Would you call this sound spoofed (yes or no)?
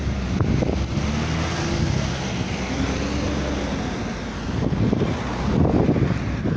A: no